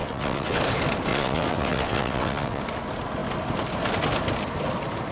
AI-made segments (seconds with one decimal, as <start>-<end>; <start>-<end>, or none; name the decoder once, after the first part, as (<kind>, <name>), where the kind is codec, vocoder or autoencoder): 0.0-0.6 (vocoder, WaveNeXt); 1.1-2.6